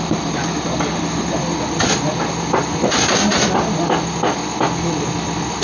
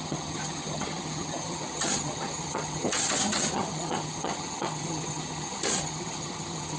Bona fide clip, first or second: first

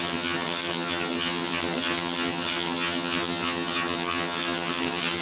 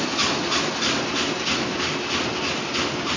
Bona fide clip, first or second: second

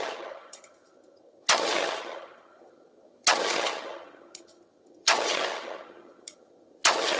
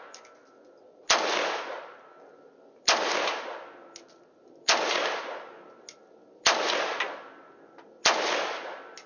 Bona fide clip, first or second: second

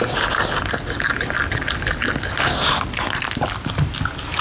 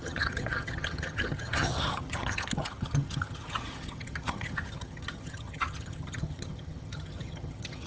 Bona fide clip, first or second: first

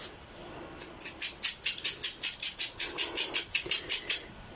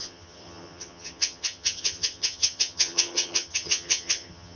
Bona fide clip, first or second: first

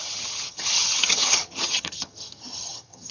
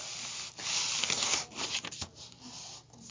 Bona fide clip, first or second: second